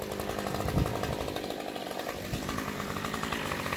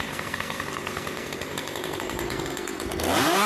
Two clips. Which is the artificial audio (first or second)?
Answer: second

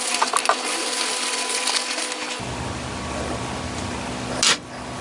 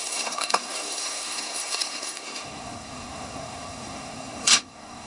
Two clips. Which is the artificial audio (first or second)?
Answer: second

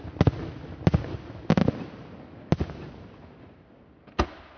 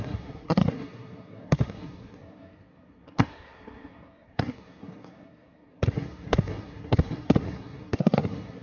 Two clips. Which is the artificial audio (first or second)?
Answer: second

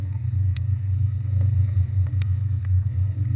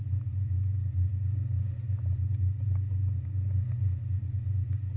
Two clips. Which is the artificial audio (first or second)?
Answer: first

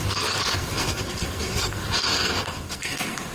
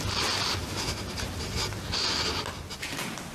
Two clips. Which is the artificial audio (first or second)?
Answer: first